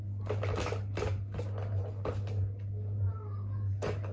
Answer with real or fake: real